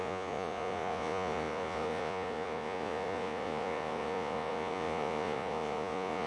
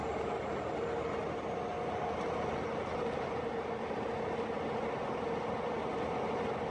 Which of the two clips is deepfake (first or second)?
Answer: first